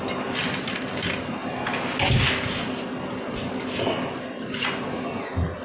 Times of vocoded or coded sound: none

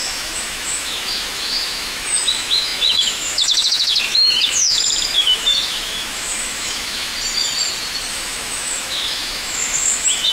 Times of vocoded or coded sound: 0.0-7.1; 8.1-10.3

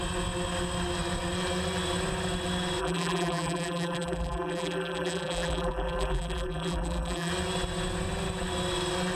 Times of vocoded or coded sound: 2.8-7.3

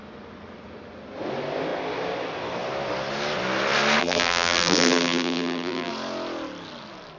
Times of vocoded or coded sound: 4.0-5.9

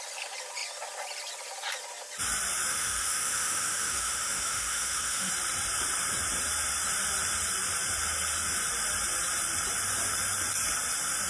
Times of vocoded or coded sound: 2.7-5.3

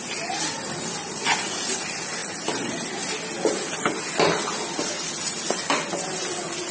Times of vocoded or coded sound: 2.2-3.0

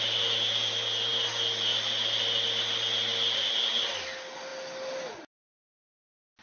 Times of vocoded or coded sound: none